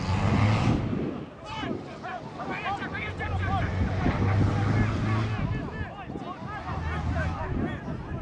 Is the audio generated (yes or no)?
no